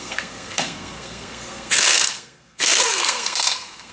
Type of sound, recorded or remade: remade